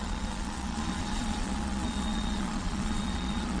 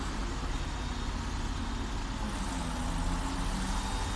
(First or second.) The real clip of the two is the second